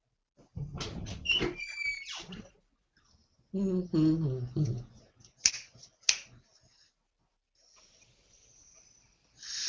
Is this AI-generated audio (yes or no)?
no